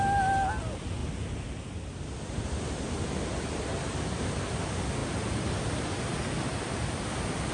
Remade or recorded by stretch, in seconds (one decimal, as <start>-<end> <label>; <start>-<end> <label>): 0.0-7.5 recorded